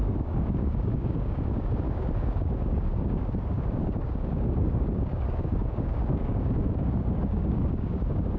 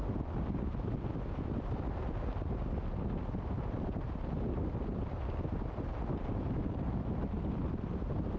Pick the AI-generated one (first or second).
first